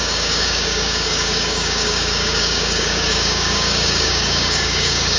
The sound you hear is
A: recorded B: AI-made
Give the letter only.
B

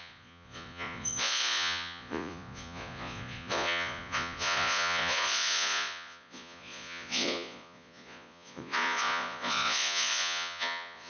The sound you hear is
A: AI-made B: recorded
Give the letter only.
A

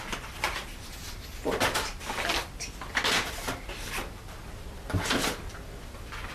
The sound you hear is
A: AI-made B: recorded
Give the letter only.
B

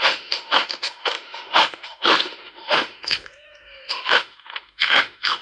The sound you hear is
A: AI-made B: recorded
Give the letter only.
A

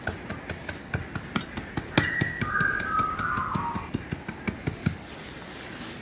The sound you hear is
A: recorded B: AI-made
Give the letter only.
A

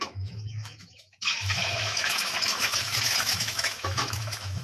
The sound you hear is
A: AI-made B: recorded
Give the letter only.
A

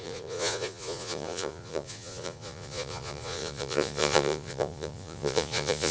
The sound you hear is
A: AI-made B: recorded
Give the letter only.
A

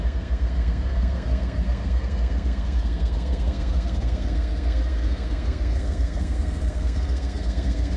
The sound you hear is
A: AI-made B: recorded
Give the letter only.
A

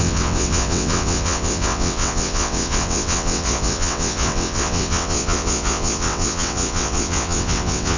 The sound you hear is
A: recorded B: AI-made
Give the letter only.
B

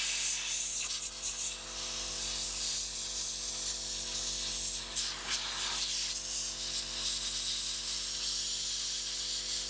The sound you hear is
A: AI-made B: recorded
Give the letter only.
B